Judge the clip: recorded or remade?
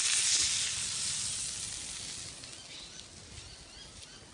recorded